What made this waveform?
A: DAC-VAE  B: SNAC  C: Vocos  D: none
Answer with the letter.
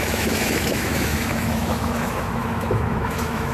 A